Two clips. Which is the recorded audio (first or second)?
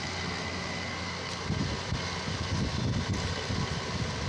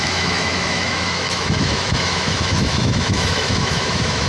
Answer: first